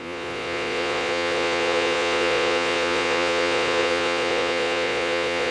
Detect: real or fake fake